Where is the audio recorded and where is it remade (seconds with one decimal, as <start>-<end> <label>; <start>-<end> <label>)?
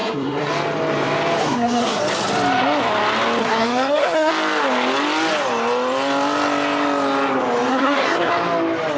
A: 0.0-0.5 remade; 0.5-1.4 recorded; 1.4-2.0 remade; 2.0-3.4 recorded; 3.4-4.3 remade; 4.3-7.7 recorded; 7.7-8.3 remade; 8.3-9.0 recorded